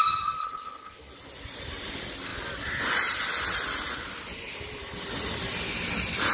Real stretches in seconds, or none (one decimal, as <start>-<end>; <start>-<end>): 0.0-0.4; 1.1-6.3

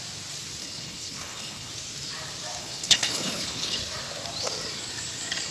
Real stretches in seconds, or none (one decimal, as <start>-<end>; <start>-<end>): 0.0-0.6; 1.7-2.6; 3.8-5.5

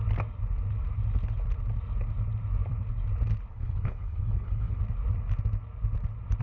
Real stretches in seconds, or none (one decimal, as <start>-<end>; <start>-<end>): 0.0-3.5; 4.8-6.4

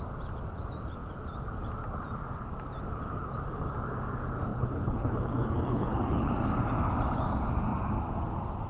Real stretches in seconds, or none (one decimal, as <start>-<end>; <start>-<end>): 0.0-4.5; 6.3-8.7